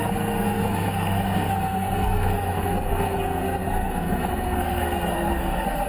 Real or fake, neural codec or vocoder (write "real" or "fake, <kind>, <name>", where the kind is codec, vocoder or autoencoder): fake, codec, SNAC